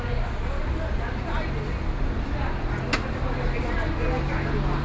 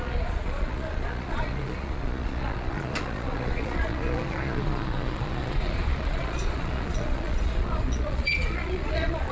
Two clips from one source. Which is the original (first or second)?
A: first